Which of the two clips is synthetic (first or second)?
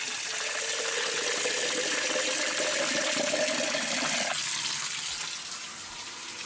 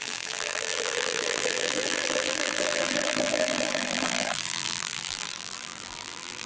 second